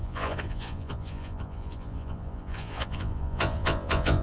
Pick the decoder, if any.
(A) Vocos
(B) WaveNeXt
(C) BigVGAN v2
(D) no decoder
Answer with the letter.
A